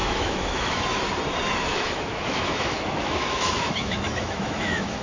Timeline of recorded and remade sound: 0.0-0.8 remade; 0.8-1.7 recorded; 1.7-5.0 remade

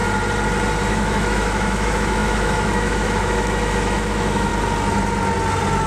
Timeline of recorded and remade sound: 0.0-0.9 recorded; 0.9-4.5 remade; 4.5-5.9 recorded

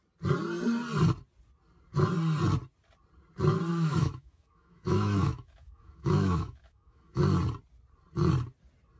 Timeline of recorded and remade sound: 0.0-3.7 recorded; 3.7-7.2 remade; 7.2-9.0 recorded

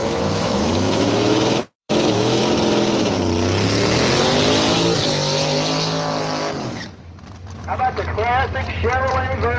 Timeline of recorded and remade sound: 0.0-2.4 remade; 2.4-9.6 recorded

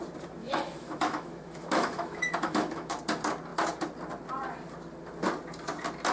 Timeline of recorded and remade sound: 0.0-0.4 recorded; 0.4-3.0 remade; 3.0-6.1 recorded

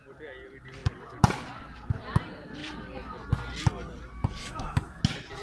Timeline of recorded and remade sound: 0.0-4.4 recorded; 4.4-5.0 remade; 5.0-5.4 recorded